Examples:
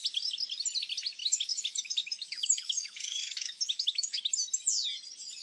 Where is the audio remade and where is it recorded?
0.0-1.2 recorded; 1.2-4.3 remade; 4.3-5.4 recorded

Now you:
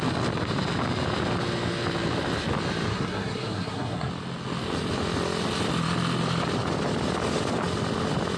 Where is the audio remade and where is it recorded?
0.0-2.9 recorded; 2.9-4.1 remade; 4.1-8.4 recorded

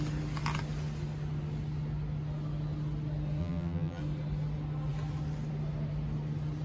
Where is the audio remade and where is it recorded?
0.0-3.4 recorded; 3.4-4.0 remade; 4.0-6.6 recorded

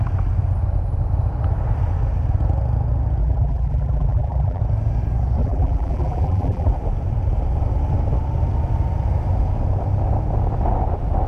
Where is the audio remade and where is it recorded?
0.0-3.2 recorded; 3.2-4.6 remade; 4.6-5.4 recorded; 5.4-6.7 remade; 6.7-11.3 recorded